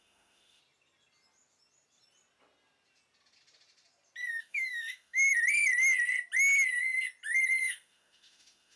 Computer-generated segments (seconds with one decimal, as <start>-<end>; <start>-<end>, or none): 0.0-0.6; 4.4-5.3; 7.6-8.8